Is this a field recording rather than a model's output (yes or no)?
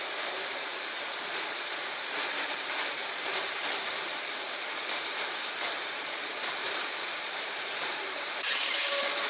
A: no